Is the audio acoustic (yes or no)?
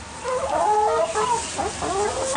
yes